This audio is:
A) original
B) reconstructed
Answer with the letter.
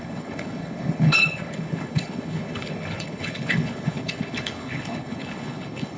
B